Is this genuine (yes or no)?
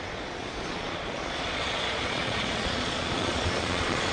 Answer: no